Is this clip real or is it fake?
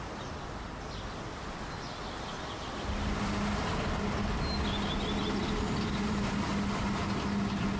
real